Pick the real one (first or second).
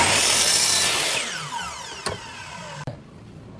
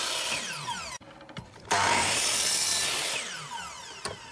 second